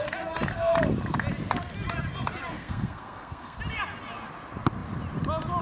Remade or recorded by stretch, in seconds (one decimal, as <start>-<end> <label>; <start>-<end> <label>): 0.0-2.5 recorded; 2.5-3.6 remade; 3.6-5.6 recorded